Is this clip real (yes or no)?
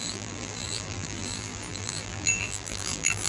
no